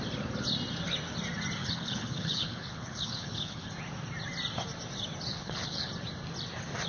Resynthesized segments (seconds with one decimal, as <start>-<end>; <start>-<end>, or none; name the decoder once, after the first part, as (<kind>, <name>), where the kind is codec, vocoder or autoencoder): 1.6-3.7 (codec, HILCodec); 5.3-5.9